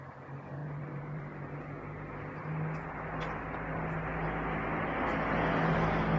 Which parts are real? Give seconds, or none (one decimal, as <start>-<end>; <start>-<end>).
0.0-0.6; 1.2-6.2